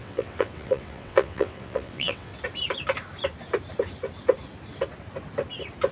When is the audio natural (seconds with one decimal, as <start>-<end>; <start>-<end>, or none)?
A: 2.3-5.9